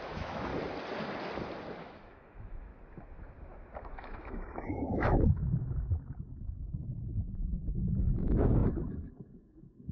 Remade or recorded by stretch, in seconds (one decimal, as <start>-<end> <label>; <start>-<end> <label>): 0.0-0.5 remade; 0.5-1.8 recorded; 1.8-2.7 remade; 2.7-4.0 recorded; 4.0-9.9 remade